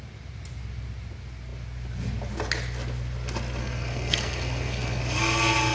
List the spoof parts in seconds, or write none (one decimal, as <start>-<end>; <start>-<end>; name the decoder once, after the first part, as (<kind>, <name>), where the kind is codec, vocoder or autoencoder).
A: 3.6-5.0 (codec, SNAC)